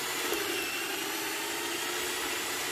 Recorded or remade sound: recorded